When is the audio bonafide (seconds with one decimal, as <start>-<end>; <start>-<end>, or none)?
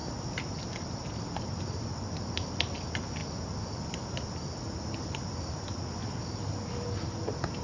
0.0-7.6